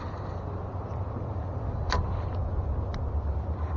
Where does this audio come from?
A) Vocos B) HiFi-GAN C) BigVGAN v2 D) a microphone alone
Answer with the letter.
D